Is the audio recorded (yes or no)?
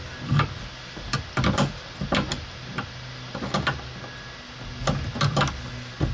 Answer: yes